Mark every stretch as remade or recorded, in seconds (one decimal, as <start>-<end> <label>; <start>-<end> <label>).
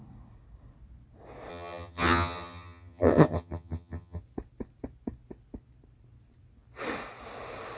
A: 0.0-1.5 recorded; 1.5-4.2 remade; 4.2-7.8 recorded